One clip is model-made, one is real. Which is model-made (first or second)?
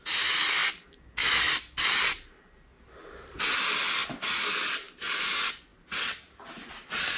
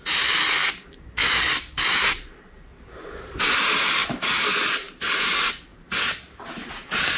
second